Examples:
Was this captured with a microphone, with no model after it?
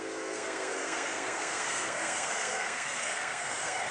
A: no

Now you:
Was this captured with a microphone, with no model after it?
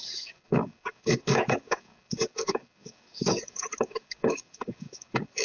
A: no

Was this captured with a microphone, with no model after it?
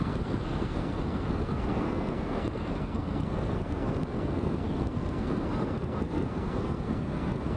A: no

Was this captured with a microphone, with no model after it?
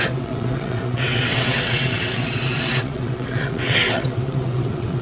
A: no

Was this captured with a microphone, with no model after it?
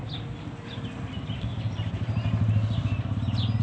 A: yes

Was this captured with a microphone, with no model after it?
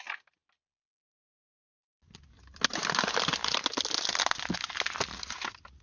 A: yes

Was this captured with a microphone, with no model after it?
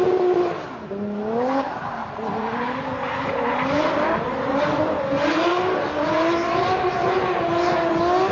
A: yes